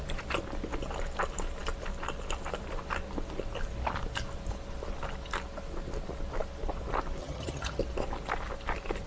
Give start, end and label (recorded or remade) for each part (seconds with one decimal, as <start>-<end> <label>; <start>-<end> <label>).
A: 0.0-7.2 recorded; 7.2-7.8 remade; 7.8-9.1 recorded